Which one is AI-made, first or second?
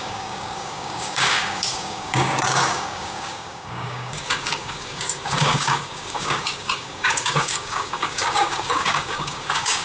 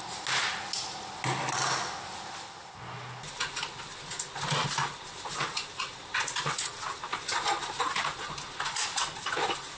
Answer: first